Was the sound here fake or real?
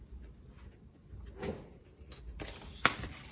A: real